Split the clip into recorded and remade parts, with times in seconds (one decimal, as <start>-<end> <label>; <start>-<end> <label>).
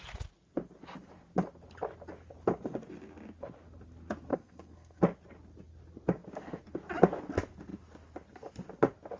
0.0-4.3 recorded; 4.3-5.0 remade; 5.0-9.2 recorded